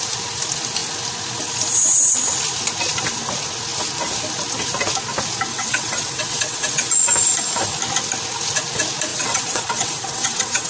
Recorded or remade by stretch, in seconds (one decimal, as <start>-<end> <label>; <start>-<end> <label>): 0.0-5.5 recorded; 5.5-6.9 remade; 6.9-9.1 recorded; 9.1-10.7 remade